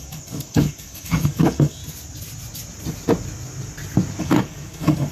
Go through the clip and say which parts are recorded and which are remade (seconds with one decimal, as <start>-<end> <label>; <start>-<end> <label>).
0.0-1.8 remade; 1.8-4.2 recorded; 4.2-5.1 remade